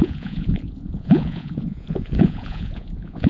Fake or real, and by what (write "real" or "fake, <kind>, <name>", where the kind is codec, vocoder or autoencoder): fake, vocoder, Vocos